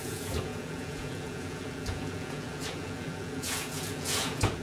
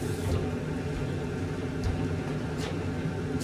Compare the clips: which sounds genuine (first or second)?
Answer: second